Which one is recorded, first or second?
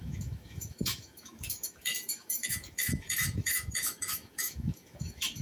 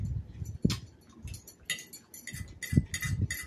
second